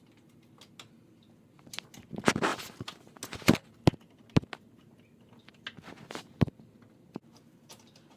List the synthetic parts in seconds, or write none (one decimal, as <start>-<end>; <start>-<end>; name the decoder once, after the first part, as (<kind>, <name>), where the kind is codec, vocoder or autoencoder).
none